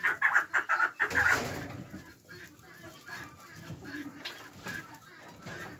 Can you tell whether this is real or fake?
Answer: real